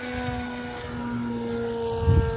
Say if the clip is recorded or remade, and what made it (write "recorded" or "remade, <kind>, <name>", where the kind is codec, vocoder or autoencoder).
recorded